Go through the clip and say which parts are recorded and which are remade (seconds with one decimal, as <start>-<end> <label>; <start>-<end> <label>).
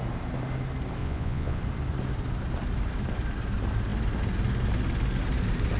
0.0-1.0 recorded; 1.0-1.6 remade; 1.6-5.8 recorded